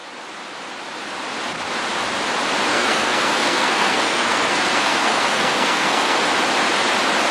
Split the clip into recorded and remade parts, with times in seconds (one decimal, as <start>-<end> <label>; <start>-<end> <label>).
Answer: 0.0-2.7 recorded; 2.7-6.2 remade; 6.2-7.3 recorded